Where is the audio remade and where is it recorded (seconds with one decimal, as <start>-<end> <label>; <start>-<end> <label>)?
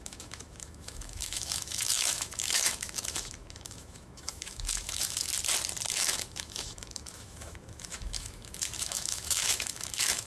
0.0-5.3 remade; 5.3-5.9 recorded; 5.9-10.3 remade